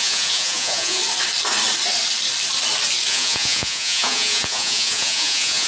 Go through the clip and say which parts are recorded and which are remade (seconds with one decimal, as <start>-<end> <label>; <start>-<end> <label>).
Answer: 0.0-1.0 remade; 1.0-3.1 recorded; 3.1-5.7 remade